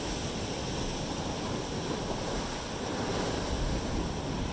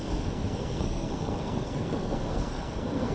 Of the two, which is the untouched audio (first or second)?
first